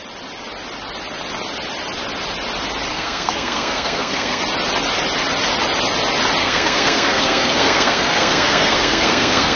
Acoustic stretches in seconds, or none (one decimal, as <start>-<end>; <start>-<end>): 0.0-2.9; 4.4-6.4